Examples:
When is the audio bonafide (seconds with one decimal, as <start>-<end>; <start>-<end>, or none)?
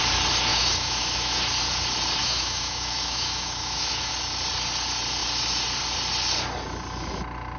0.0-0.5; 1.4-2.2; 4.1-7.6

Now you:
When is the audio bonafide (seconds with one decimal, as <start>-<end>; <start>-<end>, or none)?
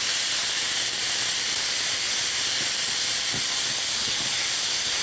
0.0-5.0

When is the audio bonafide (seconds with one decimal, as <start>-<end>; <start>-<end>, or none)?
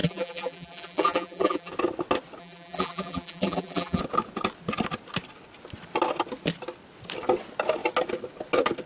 1.7-2.4; 4.0-8.9